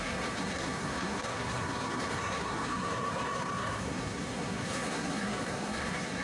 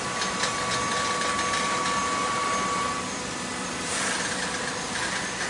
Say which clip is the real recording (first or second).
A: second